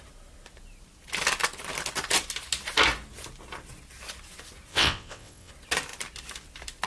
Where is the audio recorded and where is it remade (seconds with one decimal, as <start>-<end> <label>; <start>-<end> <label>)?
0.0-4.7 recorded; 4.7-5.5 remade; 5.5-6.9 recorded